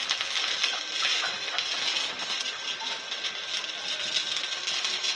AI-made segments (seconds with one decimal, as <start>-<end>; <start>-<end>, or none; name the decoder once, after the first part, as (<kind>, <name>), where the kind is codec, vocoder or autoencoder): none